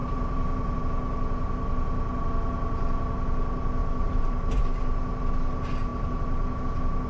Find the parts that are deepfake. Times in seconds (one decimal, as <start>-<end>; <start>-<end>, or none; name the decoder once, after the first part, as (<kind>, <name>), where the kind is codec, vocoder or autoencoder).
0.0-0.8 (vocoder, BigVGAN v2); 3.8-4.6; 5.9-6.6